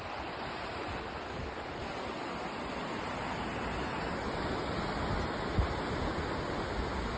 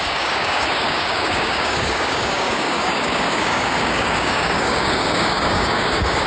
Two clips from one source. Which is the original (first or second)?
first